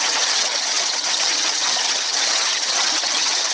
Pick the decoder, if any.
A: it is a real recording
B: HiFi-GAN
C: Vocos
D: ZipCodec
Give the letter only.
B